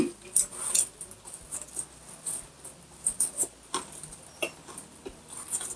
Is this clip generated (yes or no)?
no